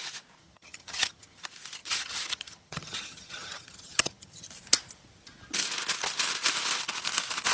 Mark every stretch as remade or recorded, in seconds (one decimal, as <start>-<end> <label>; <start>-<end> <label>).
0.0-0.4 recorded; 0.4-1.4 remade; 1.4-1.8 recorded; 1.8-4.5 remade; 4.5-7.5 recorded